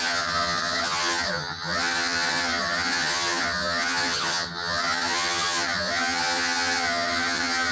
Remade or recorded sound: remade